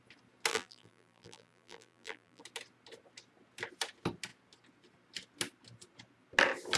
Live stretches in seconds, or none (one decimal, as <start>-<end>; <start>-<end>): 0.0-0.5; 2.4-6.8